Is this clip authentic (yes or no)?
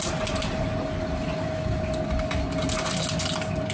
yes